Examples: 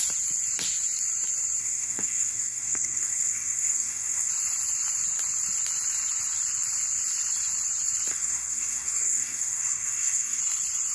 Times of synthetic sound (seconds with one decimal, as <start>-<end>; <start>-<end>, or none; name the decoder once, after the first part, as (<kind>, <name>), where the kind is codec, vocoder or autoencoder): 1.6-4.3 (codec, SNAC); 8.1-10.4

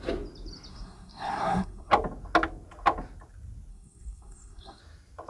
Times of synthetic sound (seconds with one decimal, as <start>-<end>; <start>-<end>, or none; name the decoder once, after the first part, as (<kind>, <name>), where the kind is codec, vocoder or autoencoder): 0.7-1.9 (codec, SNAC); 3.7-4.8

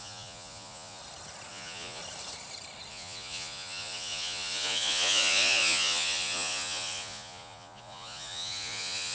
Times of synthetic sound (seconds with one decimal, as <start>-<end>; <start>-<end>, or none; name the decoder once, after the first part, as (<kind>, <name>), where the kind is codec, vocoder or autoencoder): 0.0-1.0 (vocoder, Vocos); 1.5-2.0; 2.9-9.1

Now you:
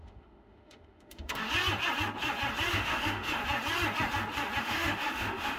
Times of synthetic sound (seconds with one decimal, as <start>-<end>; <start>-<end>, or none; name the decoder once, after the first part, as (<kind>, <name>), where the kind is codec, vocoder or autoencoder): 0.0-1.4 (autoencoder, DAC-VAE); 2.7-3.4; 4.6-5.6

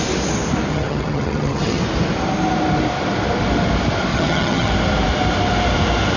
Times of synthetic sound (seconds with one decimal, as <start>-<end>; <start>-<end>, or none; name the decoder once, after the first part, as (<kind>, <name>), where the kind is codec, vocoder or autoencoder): 0.7-1.8 (vocoder, HiFi-GAN); 4.1-4.7